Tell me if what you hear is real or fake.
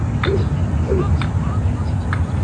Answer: real